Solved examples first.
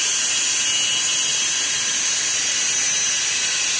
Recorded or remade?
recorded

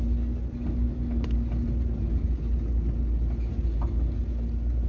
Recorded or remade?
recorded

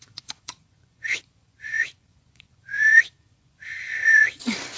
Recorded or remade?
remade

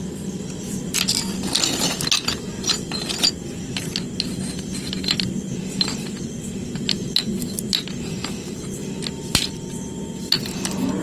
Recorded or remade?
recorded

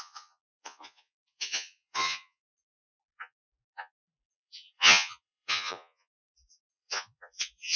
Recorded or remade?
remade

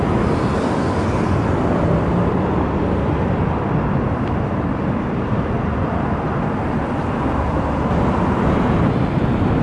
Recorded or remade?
recorded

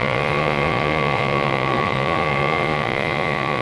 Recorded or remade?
remade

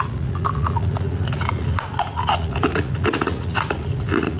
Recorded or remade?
remade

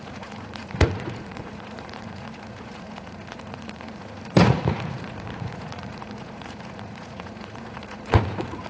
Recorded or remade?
remade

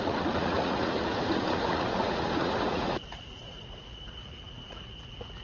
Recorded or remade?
remade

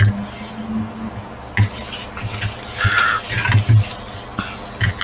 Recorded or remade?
recorded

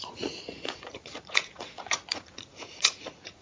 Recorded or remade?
remade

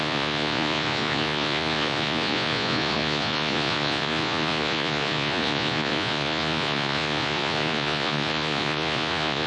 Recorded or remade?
remade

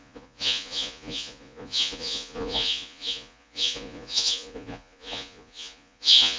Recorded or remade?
remade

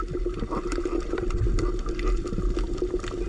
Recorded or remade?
recorded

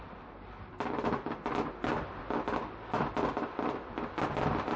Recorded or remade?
recorded